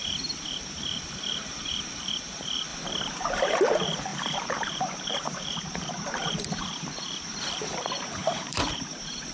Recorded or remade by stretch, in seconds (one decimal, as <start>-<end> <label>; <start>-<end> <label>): 0.0-2.7 remade; 2.7-3.3 recorded; 3.3-9.3 remade